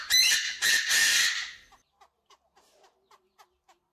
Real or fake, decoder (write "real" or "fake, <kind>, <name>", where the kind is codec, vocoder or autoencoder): real